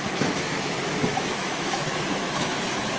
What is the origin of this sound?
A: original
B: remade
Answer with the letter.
B